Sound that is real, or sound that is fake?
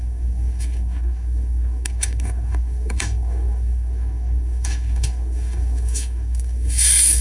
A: fake